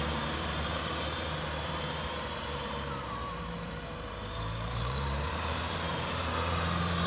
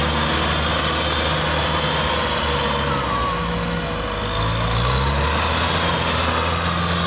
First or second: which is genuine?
second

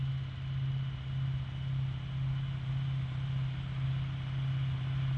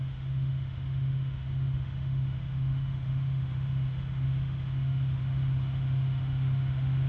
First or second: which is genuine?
first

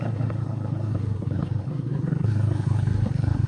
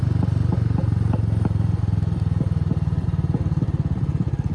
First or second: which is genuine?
second